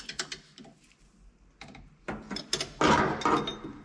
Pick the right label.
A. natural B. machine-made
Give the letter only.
A